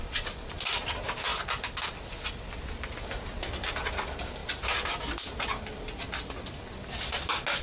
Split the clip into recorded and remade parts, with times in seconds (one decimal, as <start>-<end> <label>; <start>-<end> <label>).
0.0-7.6 recorded